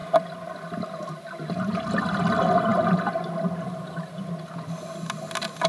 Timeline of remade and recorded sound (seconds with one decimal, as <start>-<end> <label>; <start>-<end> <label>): 0.0-5.7 recorded